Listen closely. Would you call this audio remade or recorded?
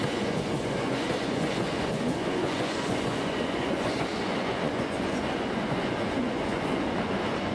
remade